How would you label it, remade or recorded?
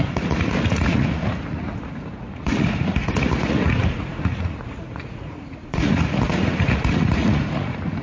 remade